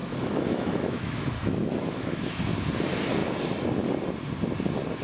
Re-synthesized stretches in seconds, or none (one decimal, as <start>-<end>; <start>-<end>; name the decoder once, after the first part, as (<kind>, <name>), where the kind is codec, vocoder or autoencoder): 0.0-2.4 (autoencoder, DAC-VAE)